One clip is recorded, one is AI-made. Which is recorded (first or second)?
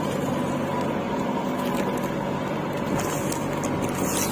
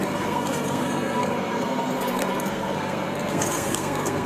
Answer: first